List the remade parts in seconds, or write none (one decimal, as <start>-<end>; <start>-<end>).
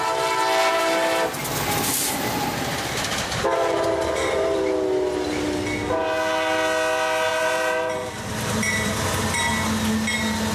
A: 0.7-1.4; 3.5-4.6; 7.3-9.2